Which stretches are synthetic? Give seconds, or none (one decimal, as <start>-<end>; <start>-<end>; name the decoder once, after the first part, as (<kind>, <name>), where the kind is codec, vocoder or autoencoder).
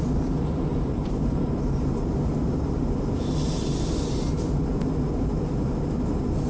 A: 0.7-2.4 (vocoder, BigVGAN v2)